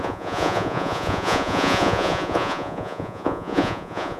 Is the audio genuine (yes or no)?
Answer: no